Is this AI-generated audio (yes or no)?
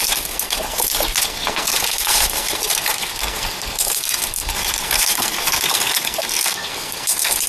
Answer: yes